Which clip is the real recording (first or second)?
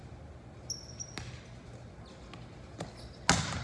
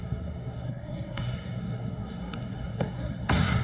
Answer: first